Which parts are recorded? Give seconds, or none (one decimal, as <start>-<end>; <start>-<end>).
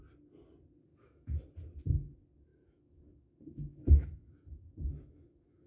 0.0-0.9; 1.4-2.5